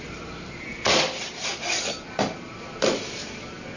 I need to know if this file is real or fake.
fake